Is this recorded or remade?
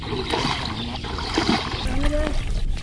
recorded